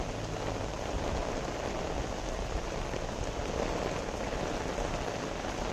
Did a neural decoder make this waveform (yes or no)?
no